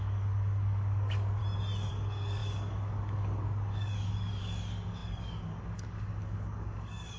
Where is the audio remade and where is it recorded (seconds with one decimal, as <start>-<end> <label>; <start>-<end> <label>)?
0.0-1.4 remade; 1.4-1.9 recorded; 1.9-7.2 remade